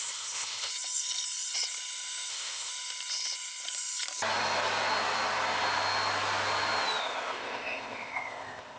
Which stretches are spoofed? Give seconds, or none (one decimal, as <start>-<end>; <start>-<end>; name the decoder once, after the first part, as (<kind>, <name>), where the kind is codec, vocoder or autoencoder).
0.0-0.7 (codec, ZipCodec); 2.3-2.7; 7.0-8.8